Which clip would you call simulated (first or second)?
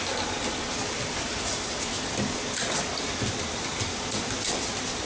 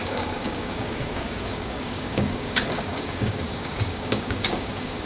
second